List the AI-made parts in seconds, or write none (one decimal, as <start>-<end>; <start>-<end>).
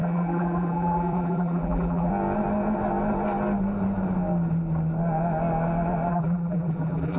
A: 0.0-2.1; 6.1-7.2